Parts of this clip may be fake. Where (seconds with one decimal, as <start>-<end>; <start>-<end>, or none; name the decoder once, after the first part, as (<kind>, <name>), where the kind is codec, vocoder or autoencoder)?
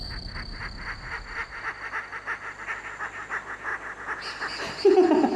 none